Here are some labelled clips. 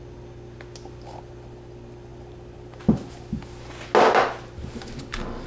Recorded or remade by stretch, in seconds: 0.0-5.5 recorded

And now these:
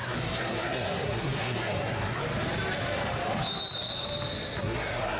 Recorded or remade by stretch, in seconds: 0.0-2.2 remade; 2.2-4.6 recorded; 4.6-5.2 remade

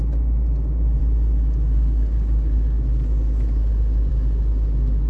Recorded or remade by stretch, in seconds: 0.0-5.1 recorded

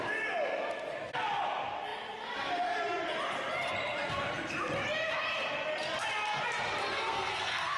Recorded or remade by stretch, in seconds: 0.0-6.9 recorded; 6.9-7.8 remade

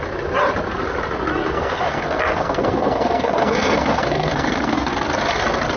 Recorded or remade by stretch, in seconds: 0.0-1.4 recorded; 1.4-4.9 remade; 4.9-5.8 recorded